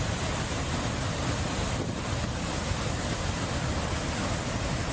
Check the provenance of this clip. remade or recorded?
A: recorded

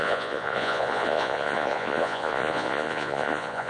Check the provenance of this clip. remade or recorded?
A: remade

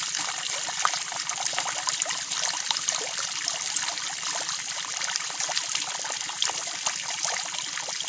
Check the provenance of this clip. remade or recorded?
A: remade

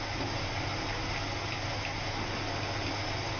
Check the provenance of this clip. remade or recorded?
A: recorded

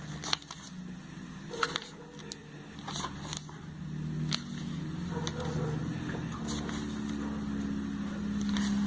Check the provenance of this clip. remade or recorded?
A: recorded